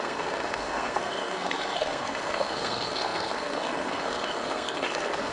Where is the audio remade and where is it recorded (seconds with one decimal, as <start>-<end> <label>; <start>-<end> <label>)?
0.0-5.3 remade